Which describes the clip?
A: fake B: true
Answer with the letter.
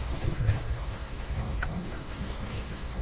A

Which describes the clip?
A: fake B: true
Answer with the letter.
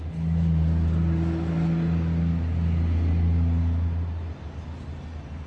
B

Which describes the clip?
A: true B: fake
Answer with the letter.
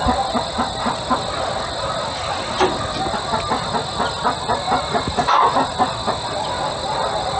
A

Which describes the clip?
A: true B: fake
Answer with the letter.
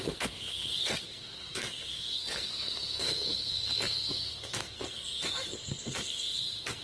B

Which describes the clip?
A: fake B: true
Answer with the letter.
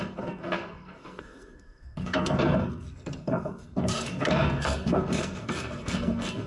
A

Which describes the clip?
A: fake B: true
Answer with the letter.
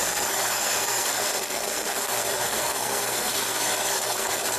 A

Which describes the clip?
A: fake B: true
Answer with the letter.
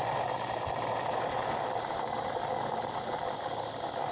B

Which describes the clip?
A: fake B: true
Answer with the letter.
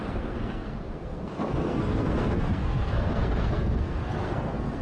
A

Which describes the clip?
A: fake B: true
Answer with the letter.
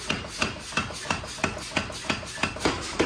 B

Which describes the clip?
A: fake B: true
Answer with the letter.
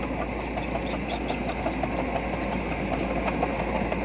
B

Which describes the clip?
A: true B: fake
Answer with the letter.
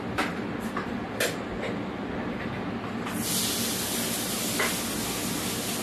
A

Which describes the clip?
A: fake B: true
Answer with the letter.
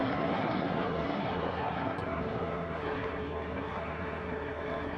A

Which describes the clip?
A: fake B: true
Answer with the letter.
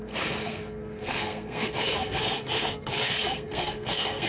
A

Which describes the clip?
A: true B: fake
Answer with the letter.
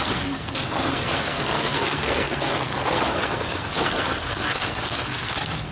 B